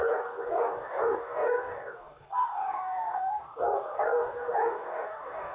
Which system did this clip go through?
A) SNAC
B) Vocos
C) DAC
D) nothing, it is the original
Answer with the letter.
C